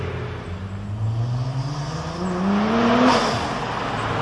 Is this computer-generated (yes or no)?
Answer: no